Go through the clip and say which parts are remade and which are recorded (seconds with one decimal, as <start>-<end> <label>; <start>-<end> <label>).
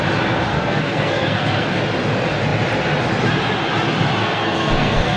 0.0-0.5 recorded; 0.5-1.8 remade; 1.8-4.2 recorded; 4.2-5.2 remade